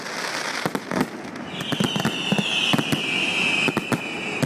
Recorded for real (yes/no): yes